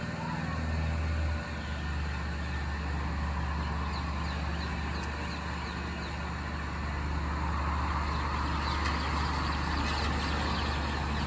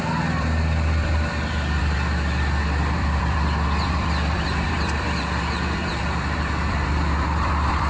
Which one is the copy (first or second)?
second